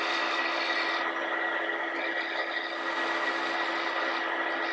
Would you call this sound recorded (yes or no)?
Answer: yes